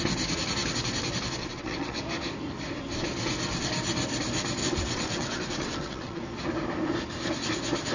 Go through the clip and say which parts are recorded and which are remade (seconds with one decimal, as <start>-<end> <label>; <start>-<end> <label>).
0.0-1.4 recorded; 1.4-2.0 remade; 2.0-4.6 recorded; 4.6-6.2 remade; 6.2-7.9 recorded